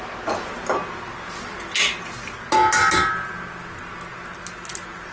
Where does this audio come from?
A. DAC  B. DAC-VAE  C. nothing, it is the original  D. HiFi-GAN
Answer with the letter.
C